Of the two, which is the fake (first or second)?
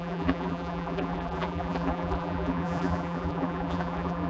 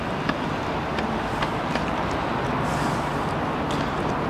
first